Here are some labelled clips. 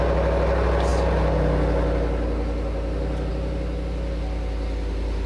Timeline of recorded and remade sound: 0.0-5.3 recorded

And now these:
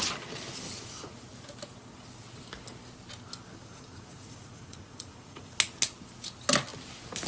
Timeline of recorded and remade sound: 0.0-3.6 recorded; 3.6-5.5 remade; 5.5-7.3 recorded

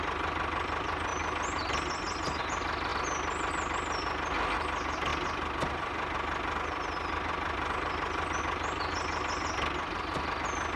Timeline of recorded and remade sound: 0.0-10.8 recorded

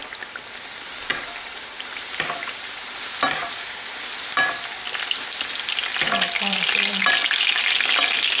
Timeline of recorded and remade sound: 0.0-1.1 recorded; 1.1-3.5 remade; 3.5-8.4 recorded